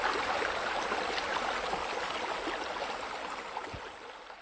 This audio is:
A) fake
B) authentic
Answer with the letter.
B